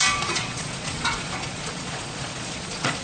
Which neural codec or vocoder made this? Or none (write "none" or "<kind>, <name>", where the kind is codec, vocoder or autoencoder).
vocoder, Vocos